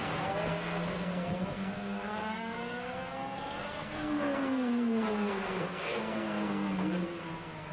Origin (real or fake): fake